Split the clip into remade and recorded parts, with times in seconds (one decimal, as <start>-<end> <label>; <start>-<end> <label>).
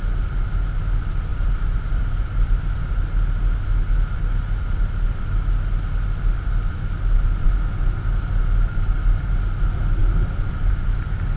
0.0-1.3 recorded; 1.3-2.9 remade; 2.9-11.4 recorded